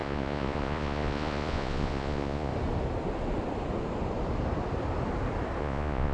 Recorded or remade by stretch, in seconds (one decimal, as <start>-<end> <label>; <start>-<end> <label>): 0.0-2.5 remade; 2.5-5.6 recorded; 5.6-6.1 remade